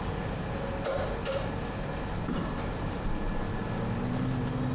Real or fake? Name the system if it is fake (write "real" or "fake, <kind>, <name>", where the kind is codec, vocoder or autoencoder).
real